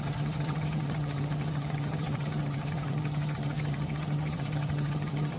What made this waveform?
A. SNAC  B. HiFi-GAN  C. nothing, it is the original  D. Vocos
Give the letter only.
B